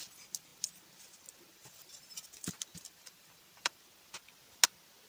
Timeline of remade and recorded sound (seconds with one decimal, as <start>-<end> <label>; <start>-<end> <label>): 0.0-1.5 recorded; 1.5-2.2 remade; 2.2-2.7 recorded; 2.7-3.8 remade; 3.8-5.1 recorded